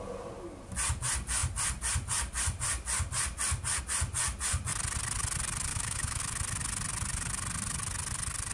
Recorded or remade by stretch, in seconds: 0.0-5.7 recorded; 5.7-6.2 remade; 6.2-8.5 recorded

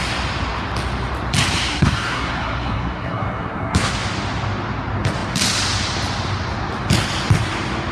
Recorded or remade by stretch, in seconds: 0.0-1.7 recorded; 1.7-3.9 remade; 3.9-7.9 recorded

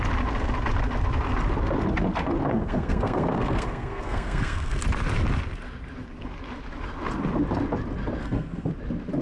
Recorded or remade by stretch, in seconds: 0.0-2.5 recorded; 2.5-4.8 remade; 4.8-8.2 recorded; 8.2-8.7 remade; 8.7-9.2 recorded

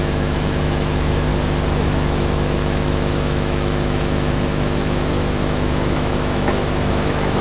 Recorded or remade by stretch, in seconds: 0.0-1.3 remade; 1.3-1.9 recorded; 1.9-7.4 remade

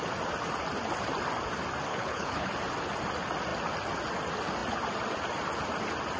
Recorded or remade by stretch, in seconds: 0.0-1.9 recorded; 1.9-2.5 remade; 2.5-6.2 recorded

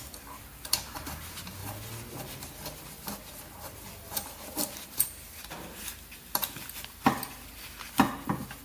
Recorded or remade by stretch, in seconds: 0.0-8.6 recorded